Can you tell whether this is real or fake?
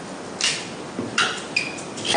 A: real